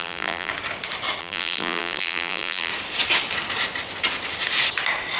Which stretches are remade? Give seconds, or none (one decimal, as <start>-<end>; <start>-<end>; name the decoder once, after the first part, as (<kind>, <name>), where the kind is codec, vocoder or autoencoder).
0.0-0.5 (vocoder, BigVGAN v2); 1.2-2.7